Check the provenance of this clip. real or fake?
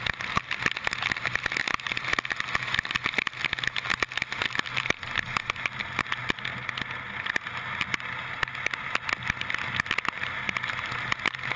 real